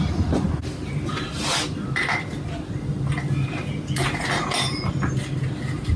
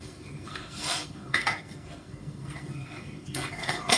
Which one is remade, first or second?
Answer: second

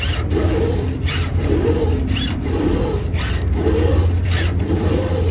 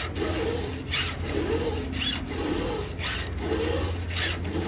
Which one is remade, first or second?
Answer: first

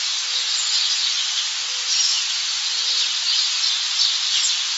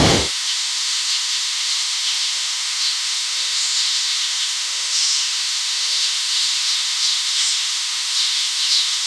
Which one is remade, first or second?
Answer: second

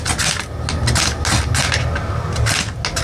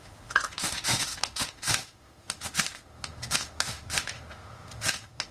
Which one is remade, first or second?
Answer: second